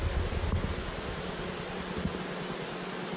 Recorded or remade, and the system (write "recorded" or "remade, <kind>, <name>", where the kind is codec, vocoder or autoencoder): recorded